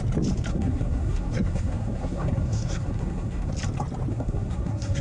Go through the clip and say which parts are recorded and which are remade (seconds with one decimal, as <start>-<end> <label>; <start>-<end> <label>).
0.0-0.5 recorded; 0.5-3.5 remade; 3.5-4.1 recorded; 4.1-5.0 remade